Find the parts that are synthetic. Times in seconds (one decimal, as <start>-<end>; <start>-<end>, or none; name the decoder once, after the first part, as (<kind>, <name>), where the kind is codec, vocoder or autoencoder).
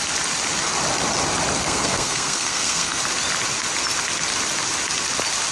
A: 1.6-3.0 (codec, SNAC)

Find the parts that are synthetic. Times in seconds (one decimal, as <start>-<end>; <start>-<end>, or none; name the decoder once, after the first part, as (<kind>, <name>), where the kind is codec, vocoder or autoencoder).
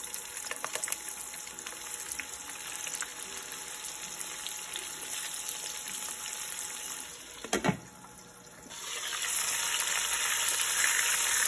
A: none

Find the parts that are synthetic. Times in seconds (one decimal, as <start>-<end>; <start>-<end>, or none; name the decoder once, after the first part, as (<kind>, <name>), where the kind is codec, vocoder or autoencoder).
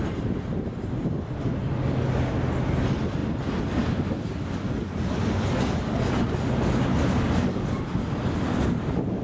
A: none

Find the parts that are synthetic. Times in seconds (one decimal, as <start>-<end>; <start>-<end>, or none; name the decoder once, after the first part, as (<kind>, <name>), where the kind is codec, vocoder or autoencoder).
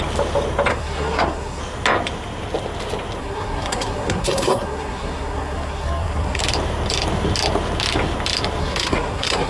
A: 0.7-1.6 (codec, SNAC); 3.2-6.4; 8.6-9.5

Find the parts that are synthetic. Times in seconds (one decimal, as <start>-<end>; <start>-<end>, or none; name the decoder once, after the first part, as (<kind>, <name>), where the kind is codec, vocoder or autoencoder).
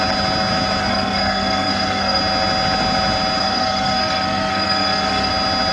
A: 0.8-2.2 (codec, SNAC); 3.4-5.3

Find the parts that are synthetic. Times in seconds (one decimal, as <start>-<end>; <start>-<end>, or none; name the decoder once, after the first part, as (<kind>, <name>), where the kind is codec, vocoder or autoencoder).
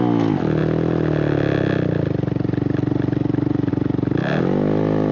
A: none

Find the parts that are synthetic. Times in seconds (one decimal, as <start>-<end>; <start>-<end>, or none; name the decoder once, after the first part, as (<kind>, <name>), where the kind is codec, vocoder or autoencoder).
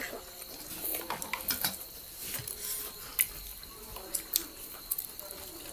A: none